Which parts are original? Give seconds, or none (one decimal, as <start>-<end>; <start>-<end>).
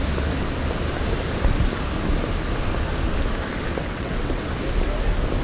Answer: 0.0-3.8; 4.4-5.4